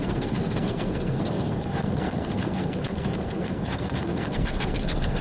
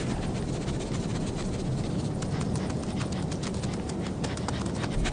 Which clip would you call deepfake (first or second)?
first